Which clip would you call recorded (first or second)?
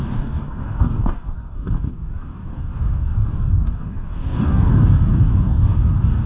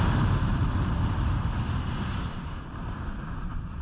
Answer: second